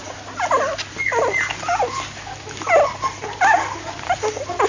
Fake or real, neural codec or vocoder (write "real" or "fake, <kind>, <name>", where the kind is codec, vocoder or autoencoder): real